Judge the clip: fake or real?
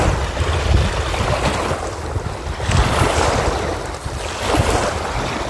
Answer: real